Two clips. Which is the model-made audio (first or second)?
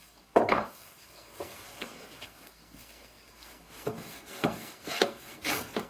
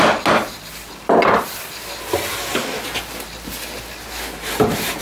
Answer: first